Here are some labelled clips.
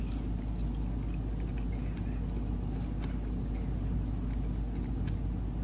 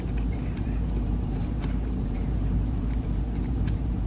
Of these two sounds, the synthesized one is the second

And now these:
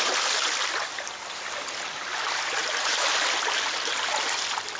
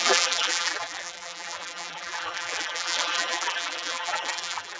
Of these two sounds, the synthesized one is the second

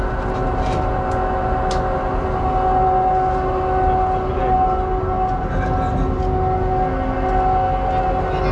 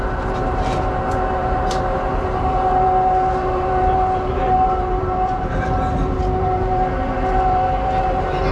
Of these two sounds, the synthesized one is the second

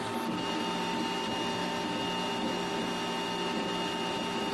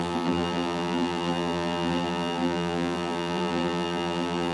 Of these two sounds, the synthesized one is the second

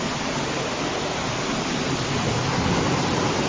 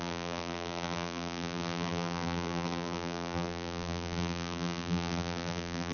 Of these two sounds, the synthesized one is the second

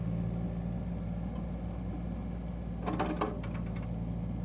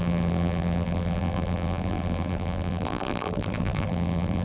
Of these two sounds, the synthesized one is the second